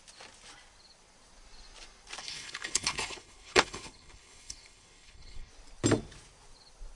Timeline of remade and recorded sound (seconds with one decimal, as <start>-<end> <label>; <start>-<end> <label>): 0.0-2.2 recorded; 2.2-5.5 remade; 5.5-7.0 recorded